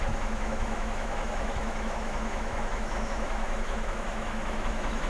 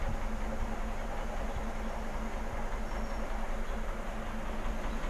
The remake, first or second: first